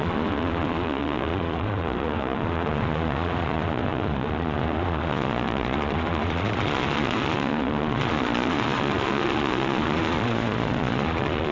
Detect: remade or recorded remade